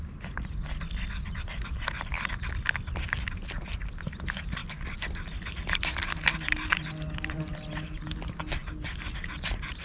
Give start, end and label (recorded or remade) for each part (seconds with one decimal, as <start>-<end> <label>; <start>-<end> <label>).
0.0-9.8 recorded